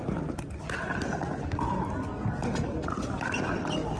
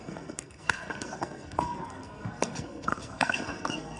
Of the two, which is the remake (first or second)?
second